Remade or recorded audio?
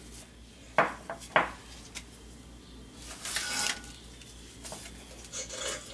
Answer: recorded